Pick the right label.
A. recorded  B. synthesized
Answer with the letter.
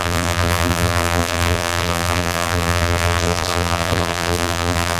B